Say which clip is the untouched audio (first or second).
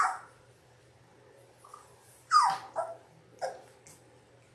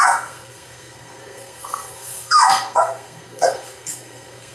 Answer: first